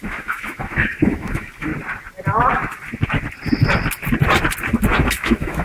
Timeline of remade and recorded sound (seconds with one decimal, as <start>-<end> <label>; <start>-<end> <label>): 0.0-1.7 remade; 1.7-5.1 recorded; 5.1-5.6 remade